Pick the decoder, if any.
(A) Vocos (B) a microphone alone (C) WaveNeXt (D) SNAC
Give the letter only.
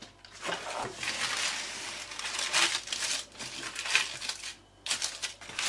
B